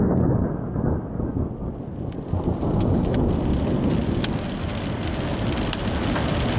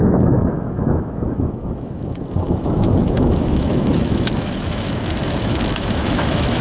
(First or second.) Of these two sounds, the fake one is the second